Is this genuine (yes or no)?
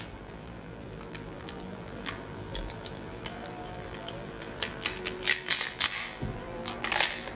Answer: no